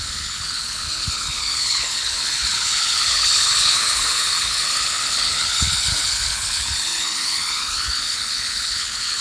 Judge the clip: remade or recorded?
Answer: remade